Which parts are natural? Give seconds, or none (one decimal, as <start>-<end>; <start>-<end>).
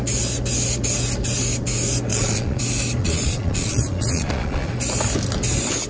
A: 0.0-2.1; 2.6-3.0; 4.7-5.9